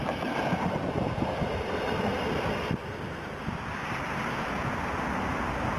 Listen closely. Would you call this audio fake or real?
real